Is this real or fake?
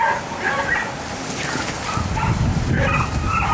real